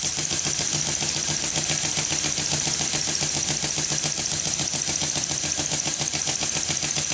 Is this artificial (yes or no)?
no